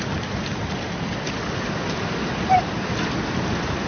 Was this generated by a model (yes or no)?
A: no